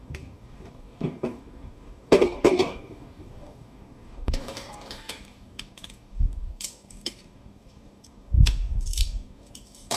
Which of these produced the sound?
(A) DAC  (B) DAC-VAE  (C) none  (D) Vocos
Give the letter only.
A